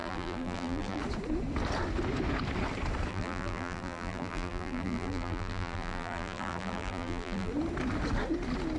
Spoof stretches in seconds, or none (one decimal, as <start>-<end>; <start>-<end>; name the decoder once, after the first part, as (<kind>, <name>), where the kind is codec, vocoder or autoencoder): 0.0-1.0 (vocoder, BigVGAN v2); 3.1-7.5